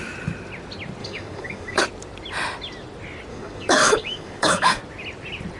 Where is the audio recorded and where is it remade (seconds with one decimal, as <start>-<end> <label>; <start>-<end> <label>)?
0.0-1.0 recorded; 1.0-1.8 remade; 1.8-3.3 recorded; 3.3-4.8 remade; 4.8-5.6 recorded